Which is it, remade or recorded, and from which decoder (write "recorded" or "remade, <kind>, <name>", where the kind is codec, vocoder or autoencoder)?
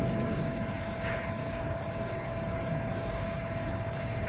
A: remade, codec, DAC